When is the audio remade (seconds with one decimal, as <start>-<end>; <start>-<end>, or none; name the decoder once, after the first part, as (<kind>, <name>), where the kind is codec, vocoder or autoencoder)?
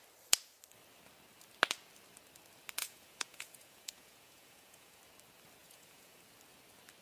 2.8-5.0 (vocoder, Vocos); 5.6-6.2